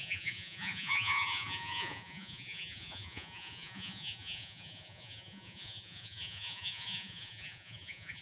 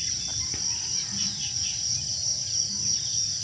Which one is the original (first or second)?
second